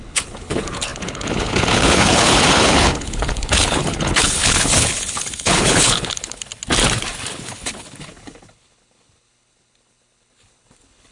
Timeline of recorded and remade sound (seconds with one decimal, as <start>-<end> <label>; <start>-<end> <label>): 0.0-6.5 remade; 6.5-7.3 recorded; 7.3-11.1 remade